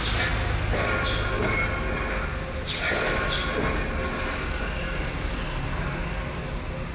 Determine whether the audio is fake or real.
real